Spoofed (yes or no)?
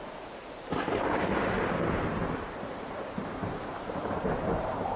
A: yes